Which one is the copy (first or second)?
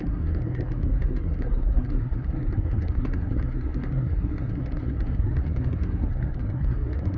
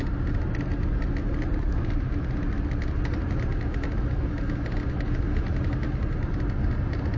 first